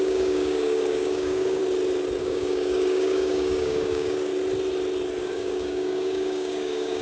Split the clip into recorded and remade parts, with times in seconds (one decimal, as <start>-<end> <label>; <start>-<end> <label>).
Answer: 0.0-1.6 remade; 1.6-2.2 recorded; 2.2-4.3 remade; 4.3-5.2 recorded; 5.2-7.0 remade

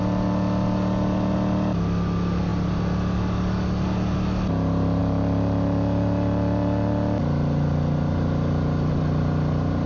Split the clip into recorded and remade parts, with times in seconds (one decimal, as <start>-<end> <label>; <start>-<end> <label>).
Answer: 0.0-9.9 recorded

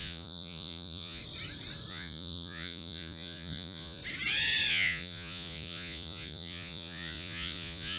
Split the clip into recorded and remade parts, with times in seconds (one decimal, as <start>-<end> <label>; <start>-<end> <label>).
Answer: 0.0-1.2 remade; 1.2-1.9 recorded; 1.9-4.0 remade; 4.0-4.7 recorded; 4.7-8.0 remade

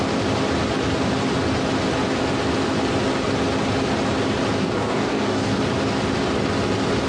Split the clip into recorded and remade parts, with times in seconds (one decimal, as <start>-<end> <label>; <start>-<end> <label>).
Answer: 0.0-4.6 recorded; 4.6-5.6 remade; 5.6-7.1 recorded

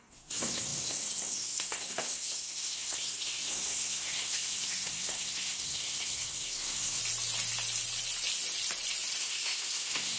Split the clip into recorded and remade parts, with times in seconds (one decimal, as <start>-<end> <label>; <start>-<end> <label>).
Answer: 0.0-7.0 remade; 7.0-9.2 recorded; 9.2-10.2 remade

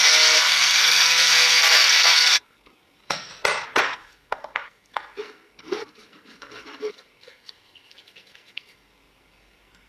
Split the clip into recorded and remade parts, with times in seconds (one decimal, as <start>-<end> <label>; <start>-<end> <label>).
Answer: 0.0-3.3 remade; 3.3-3.8 recorded; 3.8-9.9 remade

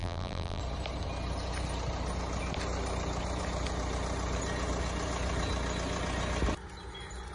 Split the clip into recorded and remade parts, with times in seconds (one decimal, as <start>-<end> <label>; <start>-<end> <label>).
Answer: 0.0-0.6 remade; 0.6-7.3 recorded

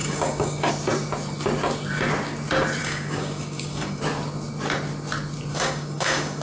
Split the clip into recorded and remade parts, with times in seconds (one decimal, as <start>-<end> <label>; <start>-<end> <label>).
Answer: 0.0-0.7 remade; 0.7-2.8 recorded; 2.8-4.0 remade; 4.0-5.5 recorded; 5.5-6.4 remade